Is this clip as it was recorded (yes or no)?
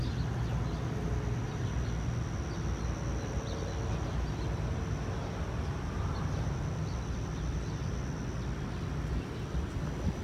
yes